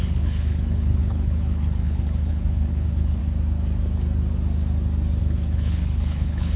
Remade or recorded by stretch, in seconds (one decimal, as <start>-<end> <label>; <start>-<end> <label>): 0.0-3.2 remade; 3.2-5.2 recorded; 5.2-6.6 remade